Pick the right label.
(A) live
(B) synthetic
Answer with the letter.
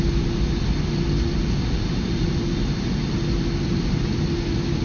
A